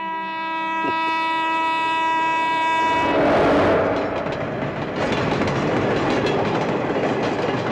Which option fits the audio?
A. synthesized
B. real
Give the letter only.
B